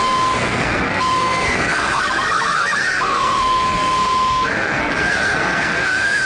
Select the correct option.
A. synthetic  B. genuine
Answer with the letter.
A